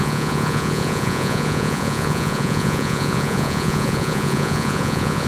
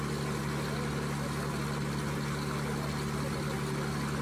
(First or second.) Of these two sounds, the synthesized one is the first